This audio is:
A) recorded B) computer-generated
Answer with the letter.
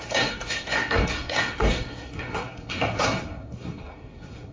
B